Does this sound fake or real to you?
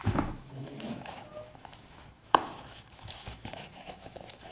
fake